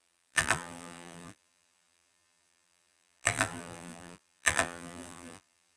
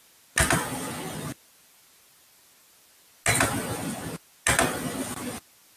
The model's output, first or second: first